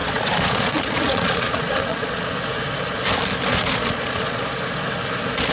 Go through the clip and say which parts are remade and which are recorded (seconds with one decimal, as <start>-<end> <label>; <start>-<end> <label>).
0.0-2.3 remade; 2.3-3.5 recorded; 3.5-4.4 remade; 4.4-5.5 recorded